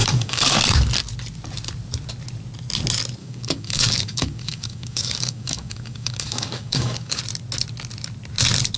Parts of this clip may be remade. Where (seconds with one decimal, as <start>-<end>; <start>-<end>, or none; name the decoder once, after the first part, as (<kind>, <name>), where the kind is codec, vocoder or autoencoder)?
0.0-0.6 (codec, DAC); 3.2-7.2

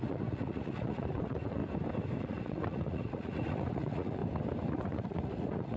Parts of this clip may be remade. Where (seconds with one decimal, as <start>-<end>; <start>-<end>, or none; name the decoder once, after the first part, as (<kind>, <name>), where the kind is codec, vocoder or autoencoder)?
0.0-1.6 (vocoder, Vocos); 2.2-4.2; 4.7-5.8

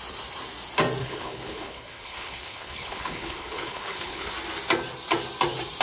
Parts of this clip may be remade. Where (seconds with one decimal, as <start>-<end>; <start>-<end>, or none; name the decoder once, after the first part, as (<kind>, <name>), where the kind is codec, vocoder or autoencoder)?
1.0-4.3 (codec, HILCodec)

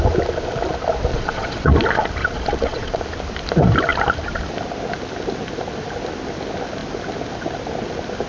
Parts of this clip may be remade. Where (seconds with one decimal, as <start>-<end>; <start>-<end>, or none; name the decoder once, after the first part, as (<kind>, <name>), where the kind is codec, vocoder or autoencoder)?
1.1-1.7 (vocoder, Vocos); 2.2-3.0